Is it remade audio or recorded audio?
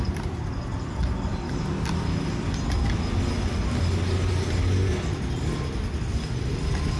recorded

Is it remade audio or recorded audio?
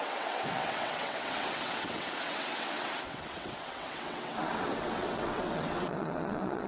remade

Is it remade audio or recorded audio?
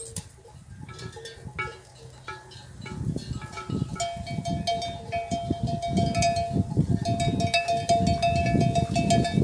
recorded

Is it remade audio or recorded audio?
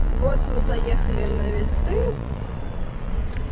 remade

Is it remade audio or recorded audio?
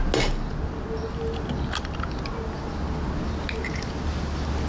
recorded